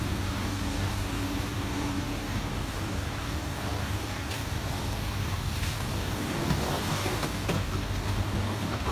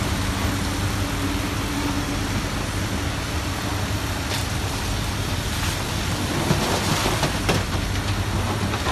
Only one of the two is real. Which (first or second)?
second